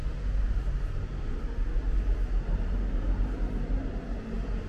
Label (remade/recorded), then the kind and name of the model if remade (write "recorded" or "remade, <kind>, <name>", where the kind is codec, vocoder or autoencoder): recorded